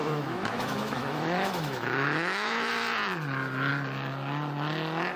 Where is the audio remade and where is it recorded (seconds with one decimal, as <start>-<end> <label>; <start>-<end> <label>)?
0.0-2.7 remade; 2.7-5.2 recorded